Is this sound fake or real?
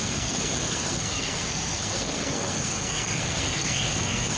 fake